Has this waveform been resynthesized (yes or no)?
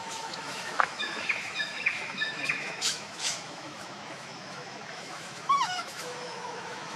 yes